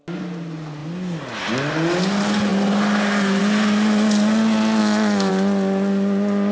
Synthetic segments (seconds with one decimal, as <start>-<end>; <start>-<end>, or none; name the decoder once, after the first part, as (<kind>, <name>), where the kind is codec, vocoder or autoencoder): 4.8-5.3 (autoencoder, DAC-VAE)